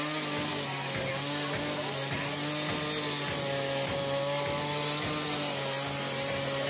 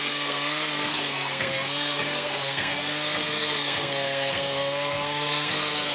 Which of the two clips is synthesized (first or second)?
second